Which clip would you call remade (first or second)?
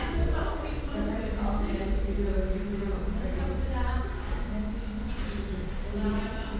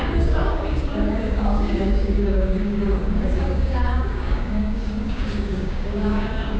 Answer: second